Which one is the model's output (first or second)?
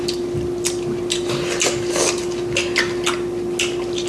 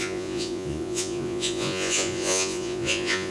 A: second